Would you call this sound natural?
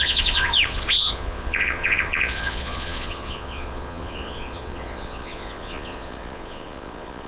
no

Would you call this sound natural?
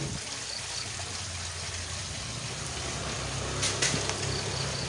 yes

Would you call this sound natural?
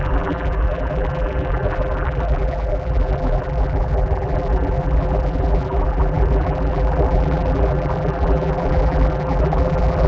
no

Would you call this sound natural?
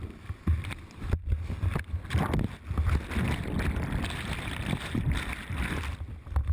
yes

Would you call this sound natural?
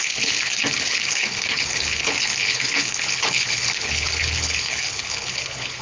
no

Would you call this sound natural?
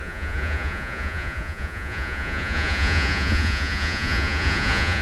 no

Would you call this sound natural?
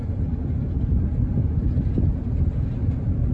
yes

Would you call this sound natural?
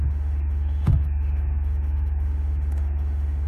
no